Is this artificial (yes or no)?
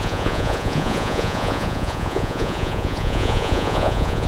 yes